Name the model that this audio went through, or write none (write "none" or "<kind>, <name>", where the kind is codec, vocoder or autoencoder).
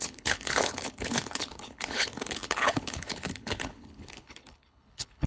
codec, HILCodec